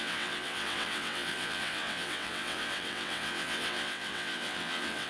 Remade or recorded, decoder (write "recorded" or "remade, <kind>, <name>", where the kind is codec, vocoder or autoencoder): remade, vocoder, WaveNeXt